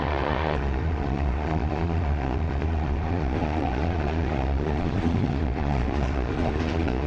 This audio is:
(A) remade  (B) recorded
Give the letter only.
A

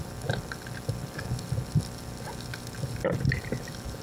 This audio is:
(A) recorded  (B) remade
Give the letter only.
A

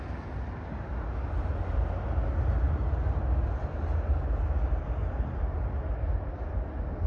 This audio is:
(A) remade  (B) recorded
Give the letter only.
B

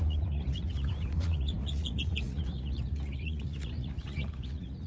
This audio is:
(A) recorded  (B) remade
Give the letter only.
B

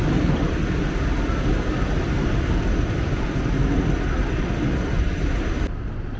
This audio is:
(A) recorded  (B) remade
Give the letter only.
A